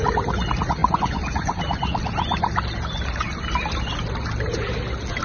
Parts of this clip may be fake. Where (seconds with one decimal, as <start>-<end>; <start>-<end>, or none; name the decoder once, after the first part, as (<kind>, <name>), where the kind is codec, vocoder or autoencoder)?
0.8-1.6 (vocoder, Vocos)